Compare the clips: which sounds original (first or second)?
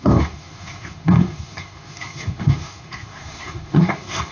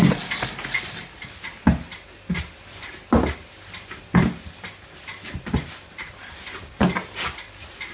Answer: second